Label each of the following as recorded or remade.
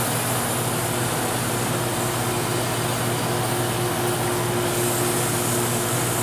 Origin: recorded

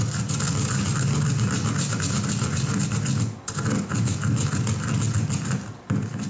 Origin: recorded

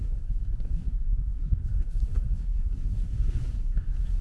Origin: remade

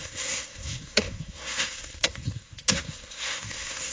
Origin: remade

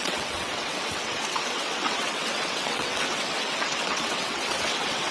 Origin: remade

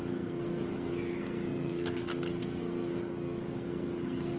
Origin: remade